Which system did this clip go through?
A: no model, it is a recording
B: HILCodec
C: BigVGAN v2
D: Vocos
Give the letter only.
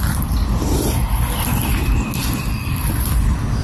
A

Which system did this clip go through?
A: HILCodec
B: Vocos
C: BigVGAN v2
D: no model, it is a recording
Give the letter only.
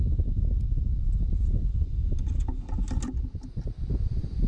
D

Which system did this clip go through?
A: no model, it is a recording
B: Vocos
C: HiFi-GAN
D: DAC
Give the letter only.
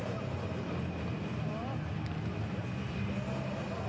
A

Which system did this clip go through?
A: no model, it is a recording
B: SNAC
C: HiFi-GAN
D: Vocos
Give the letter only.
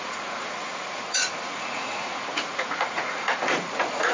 D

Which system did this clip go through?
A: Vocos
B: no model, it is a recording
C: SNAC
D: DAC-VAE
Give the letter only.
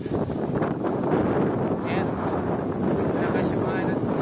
B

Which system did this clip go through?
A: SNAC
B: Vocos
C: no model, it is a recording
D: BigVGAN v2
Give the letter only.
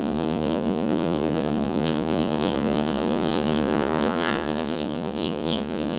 B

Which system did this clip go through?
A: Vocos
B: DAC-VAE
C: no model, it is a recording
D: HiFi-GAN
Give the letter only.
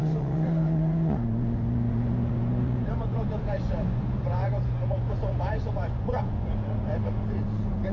A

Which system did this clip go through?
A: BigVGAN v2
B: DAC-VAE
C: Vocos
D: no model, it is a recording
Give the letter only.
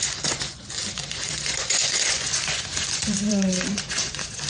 C